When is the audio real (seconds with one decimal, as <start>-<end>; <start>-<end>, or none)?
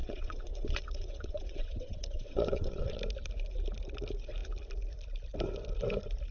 3.0-6.3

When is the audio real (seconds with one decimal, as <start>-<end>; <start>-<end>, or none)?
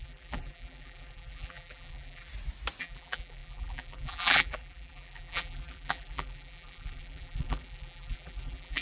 2.3-2.8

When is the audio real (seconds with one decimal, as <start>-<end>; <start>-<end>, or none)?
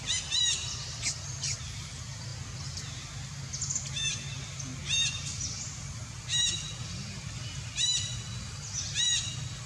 0.0-9.7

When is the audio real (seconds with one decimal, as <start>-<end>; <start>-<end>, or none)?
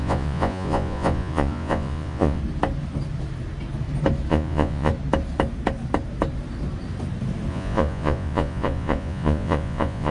2.4-4.3; 4.9-7.5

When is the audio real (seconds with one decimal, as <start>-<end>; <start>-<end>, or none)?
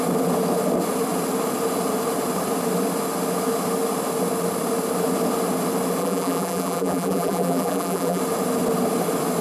0.0-6.0; 8.2-9.4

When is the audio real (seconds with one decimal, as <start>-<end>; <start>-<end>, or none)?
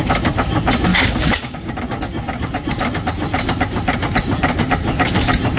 0.0-0.9; 1.7-5.6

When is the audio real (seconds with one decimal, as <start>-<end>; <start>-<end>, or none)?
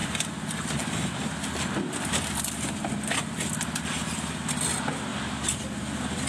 0.0-5.1; 5.6-6.3